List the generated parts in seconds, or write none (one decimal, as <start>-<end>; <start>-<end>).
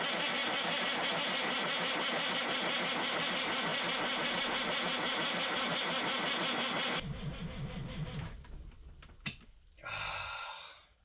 none